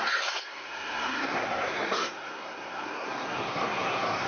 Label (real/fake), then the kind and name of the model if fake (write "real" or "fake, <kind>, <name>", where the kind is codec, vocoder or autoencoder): fake, codec, SNAC